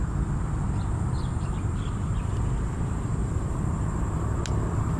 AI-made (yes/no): no